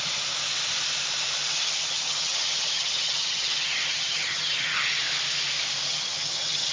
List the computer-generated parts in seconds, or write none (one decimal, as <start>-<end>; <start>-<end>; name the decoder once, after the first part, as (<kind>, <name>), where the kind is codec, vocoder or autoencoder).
1.5-4.8 (vocoder, HiFi-GAN); 5.9-6.7